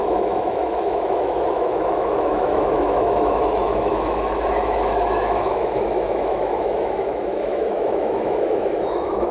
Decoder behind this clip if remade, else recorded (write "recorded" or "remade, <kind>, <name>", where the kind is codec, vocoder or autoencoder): remade, autoencoder, DAC-VAE